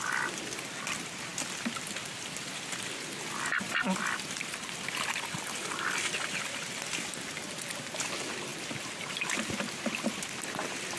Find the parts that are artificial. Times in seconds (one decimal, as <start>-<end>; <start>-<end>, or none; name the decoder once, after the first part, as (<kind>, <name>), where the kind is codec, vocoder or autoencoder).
none